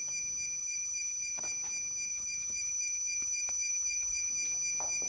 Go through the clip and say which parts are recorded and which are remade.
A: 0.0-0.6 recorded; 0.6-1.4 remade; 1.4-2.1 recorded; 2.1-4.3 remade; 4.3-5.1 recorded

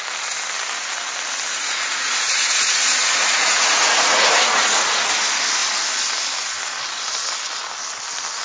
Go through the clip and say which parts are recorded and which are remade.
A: 0.0-1.5 recorded; 1.5-4.3 remade; 4.3-8.4 recorded

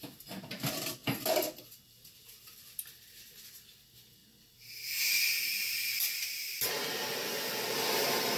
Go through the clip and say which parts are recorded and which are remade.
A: 0.0-8.4 recorded

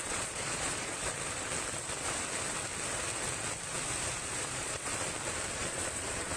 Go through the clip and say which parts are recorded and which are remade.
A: 0.0-1.0 remade; 1.0-4.1 recorded; 4.1-4.9 remade; 4.9-5.5 recorded; 5.5-6.4 remade

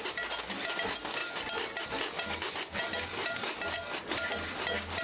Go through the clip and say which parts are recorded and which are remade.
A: 0.0-5.0 recorded